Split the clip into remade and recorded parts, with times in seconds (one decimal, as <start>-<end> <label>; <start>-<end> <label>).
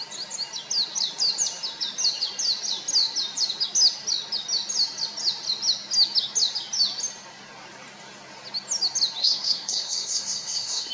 0.0-9.2 recorded; 9.2-10.9 remade